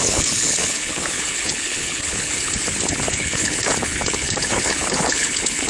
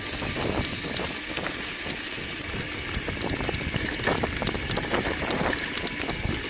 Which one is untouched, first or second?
second